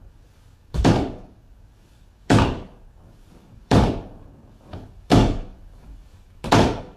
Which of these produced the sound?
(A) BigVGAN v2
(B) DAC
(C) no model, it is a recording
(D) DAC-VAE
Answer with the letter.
B